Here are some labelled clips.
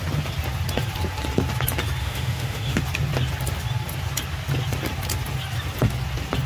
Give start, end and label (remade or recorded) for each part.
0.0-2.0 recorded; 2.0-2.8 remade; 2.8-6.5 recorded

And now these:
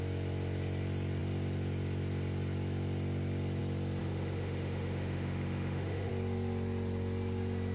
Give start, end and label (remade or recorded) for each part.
0.0-4.0 recorded; 4.0-6.1 remade; 6.1-7.7 recorded

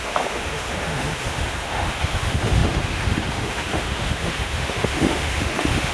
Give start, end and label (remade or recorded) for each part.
0.0-5.9 remade

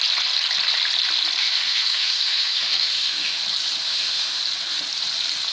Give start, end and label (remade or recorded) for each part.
0.0-1.4 recorded; 1.4-3.4 remade; 3.4-3.8 recorded; 3.8-4.4 remade; 4.4-5.5 recorded

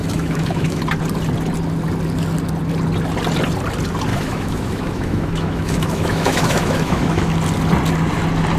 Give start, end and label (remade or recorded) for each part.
0.0-0.8 remade; 0.8-4.1 recorded; 4.1-7.2 remade; 7.2-8.6 recorded

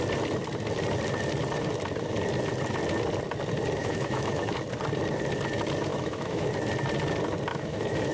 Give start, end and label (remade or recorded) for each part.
0.0-3.8 recorded; 3.8-4.5 remade; 4.5-5.9 recorded; 5.9-6.5 remade; 6.5-7.5 recorded; 7.5-8.1 remade

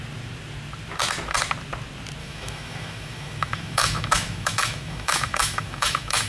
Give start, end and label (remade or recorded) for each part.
0.0-2.2 recorded; 2.2-6.3 remade

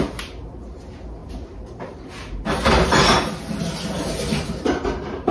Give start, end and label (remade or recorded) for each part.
0.0-5.3 recorded